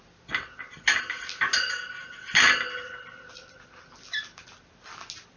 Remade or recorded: recorded